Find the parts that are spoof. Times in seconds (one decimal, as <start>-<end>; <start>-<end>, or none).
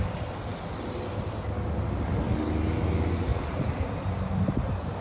none